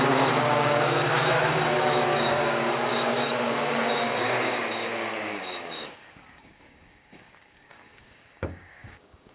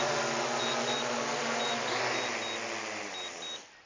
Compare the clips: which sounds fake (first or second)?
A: first